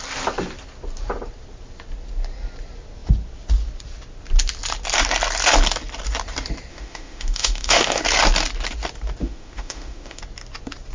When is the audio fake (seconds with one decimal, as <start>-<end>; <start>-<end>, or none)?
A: 6.7-8.0; 9.2-10.2